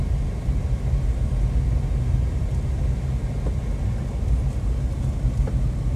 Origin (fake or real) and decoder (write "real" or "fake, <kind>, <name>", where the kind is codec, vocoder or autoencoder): real